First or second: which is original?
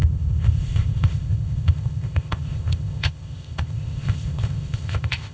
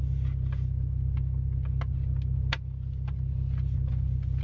second